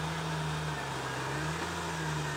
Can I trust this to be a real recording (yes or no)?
yes